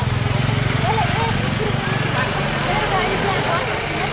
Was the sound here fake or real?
real